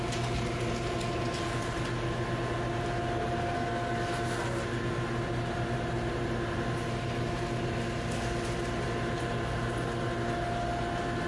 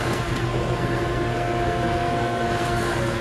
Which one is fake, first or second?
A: second